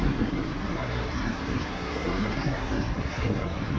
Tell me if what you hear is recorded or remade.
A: remade